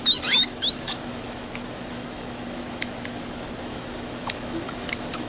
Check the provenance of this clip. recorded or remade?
remade